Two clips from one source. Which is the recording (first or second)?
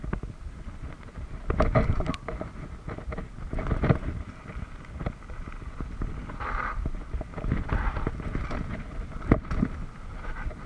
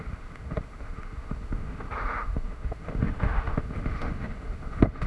first